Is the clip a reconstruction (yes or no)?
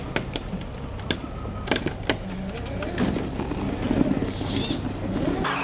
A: no